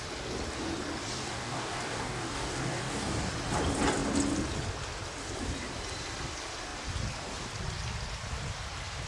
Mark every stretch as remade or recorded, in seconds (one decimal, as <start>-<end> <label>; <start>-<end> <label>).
0.0-1.2 recorded; 1.2-3.3 remade; 3.3-9.1 recorded